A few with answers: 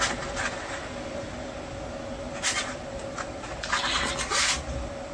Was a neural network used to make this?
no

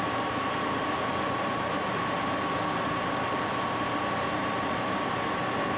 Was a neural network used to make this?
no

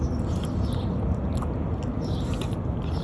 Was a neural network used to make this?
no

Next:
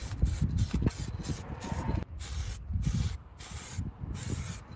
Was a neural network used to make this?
no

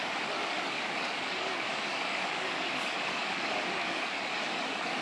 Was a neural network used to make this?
yes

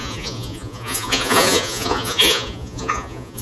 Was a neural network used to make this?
yes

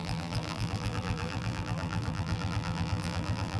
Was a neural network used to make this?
yes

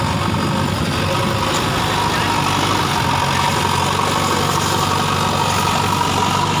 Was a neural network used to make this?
no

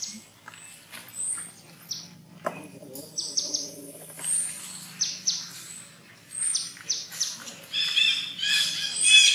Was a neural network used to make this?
no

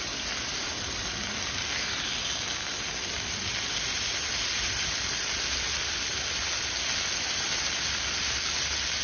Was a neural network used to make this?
no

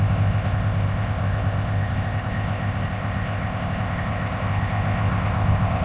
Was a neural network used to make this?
yes